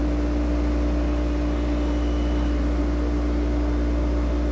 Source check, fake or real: real